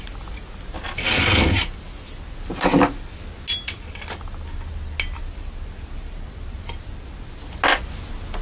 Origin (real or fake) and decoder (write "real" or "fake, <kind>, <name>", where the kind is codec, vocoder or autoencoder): real